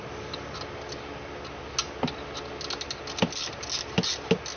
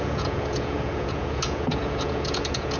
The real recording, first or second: first